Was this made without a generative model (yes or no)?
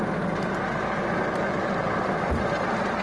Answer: yes